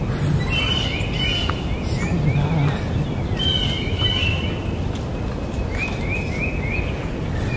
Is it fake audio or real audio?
real